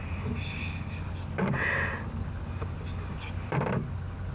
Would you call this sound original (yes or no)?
yes